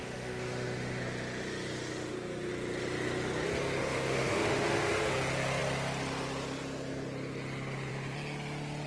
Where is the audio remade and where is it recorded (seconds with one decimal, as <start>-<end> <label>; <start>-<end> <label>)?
0.0-1.0 remade; 1.0-3.8 recorded; 3.8-5.1 remade; 5.1-8.9 recorded